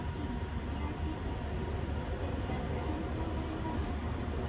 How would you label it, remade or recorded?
recorded